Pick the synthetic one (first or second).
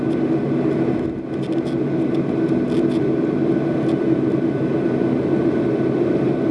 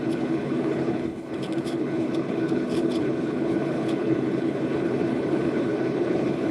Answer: second